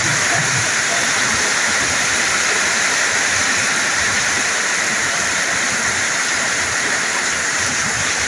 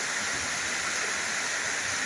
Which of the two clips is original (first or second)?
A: second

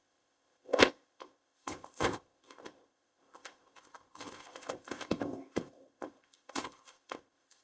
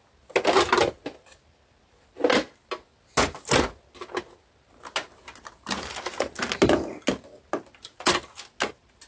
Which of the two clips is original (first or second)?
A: second